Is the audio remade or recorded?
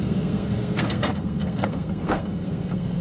remade